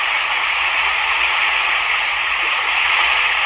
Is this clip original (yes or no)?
no